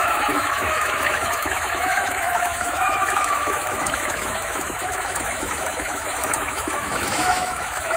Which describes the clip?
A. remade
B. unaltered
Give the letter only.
A